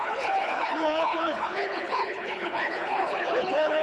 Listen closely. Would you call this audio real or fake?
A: fake